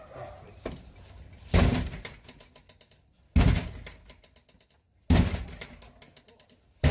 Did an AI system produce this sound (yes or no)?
no